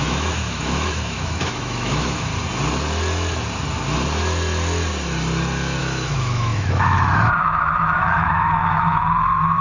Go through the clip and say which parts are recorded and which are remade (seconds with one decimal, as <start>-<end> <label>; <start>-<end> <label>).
0.0-2.3 remade; 2.3-5.8 recorded; 5.8-9.6 remade